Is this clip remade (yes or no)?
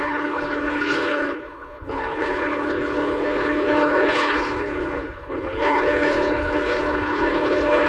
yes